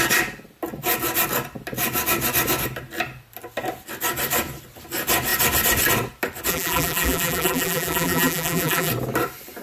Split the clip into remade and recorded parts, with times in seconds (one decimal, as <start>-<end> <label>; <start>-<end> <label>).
0.0-6.5 recorded; 6.5-8.9 remade; 8.9-9.6 recorded